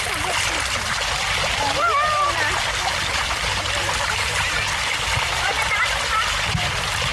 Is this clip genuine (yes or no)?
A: yes